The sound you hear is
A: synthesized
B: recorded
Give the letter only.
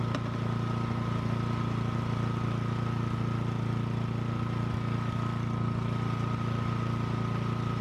B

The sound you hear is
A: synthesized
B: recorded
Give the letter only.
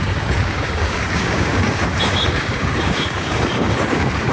A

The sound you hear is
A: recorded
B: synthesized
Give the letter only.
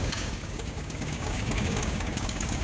B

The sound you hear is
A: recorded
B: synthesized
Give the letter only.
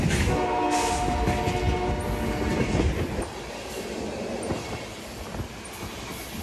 A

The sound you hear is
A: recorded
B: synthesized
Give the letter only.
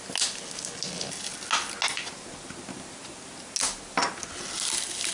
A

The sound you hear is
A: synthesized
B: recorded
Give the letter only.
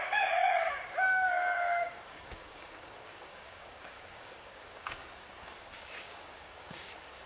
A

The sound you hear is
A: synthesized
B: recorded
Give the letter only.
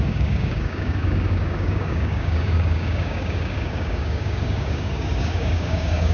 A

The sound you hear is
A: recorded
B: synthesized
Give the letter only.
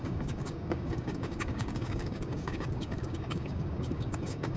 B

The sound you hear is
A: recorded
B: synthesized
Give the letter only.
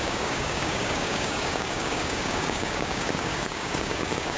B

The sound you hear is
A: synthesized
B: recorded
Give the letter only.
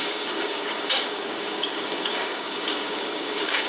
A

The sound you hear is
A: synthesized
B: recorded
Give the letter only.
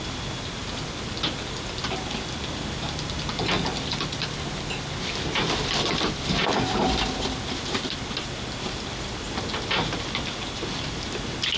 B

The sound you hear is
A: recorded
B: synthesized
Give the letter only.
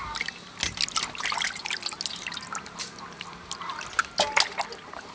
A